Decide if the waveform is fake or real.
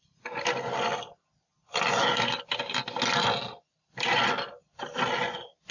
real